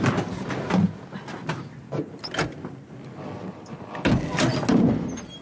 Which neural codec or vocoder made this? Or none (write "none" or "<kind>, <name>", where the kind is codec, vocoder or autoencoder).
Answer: none